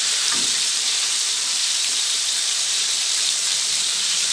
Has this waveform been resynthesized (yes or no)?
yes